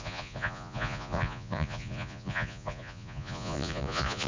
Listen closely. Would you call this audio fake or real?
fake